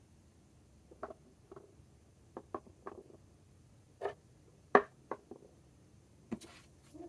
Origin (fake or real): real